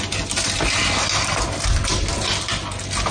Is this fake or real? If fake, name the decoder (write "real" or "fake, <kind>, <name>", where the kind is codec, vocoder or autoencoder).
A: real